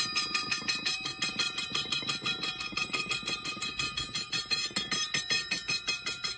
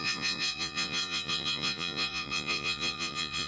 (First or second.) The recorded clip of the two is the first